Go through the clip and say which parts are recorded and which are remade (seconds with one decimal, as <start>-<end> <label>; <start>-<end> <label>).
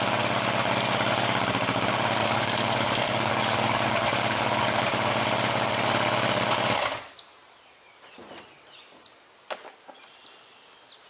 0.0-2.2 recorded; 2.2-4.8 remade; 4.8-11.1 recorded